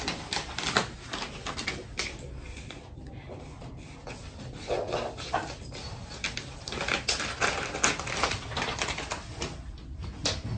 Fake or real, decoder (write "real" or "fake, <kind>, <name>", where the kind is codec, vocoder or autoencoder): real